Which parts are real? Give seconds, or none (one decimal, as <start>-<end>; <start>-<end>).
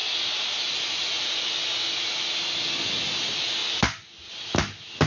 0.0-5.1